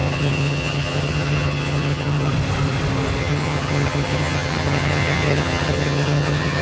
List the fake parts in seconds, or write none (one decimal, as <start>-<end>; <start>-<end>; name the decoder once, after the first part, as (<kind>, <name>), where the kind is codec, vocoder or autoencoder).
0.0-2.3 (vocoder, HiFi-GAN); 3.2-6.6